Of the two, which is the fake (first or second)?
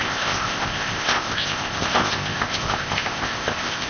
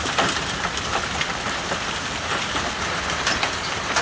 first